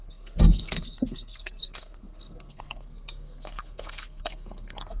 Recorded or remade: remade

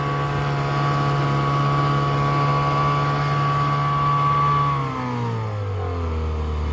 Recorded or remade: recorded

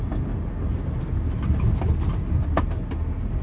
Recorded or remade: recorded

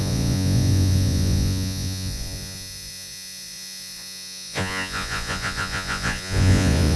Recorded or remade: remade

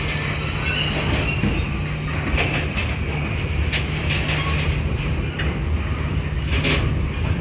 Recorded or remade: recorded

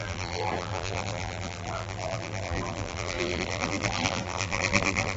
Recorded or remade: remade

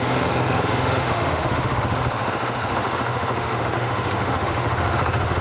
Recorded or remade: remade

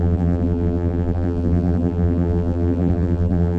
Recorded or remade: remade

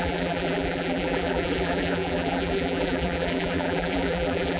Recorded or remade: remade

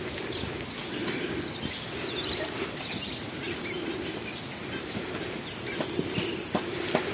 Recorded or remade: recorded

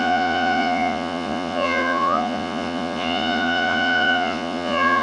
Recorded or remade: remade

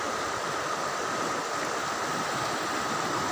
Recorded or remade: recorded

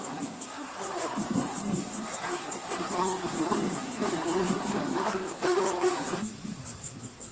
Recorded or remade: remade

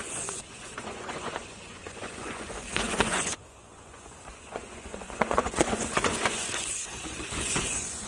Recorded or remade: remade